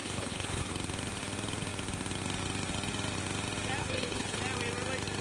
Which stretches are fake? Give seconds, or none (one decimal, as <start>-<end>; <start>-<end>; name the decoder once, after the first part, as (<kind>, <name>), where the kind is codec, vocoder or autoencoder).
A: 0.0-0.7 (codec, HILCodec); 3.8-4.4